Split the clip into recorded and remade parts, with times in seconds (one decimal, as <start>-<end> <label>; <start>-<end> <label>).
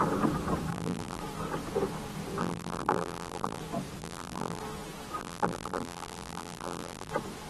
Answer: 0.0-0.7 recorded; 0.7-1.2 remade; 1.2-2.4 recorded; 2.4-3.6 remade; 3.6-4.0 recorded; 4.0-4.6 remade; 4.6-5.2 recorded; 5.2-7.1 remade; 7.1-7.5 recorded